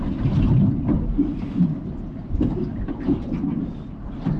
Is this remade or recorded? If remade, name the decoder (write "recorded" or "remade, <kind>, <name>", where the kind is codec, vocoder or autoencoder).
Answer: recorded